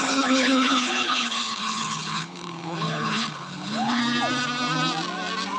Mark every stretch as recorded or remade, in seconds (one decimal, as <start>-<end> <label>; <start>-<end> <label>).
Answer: 0.0-4.0 remade; 4.0-5.6 recorded